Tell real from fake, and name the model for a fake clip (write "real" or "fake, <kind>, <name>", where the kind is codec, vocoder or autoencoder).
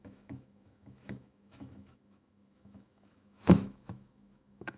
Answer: fake, autoencoder, DAC-VAE